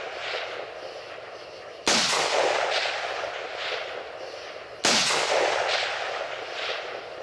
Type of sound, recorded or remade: recorded